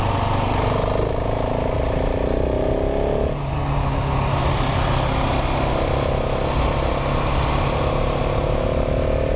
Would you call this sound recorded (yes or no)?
yes